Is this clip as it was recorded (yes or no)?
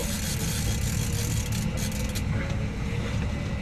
yes